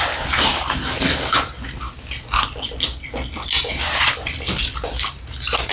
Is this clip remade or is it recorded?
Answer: recorded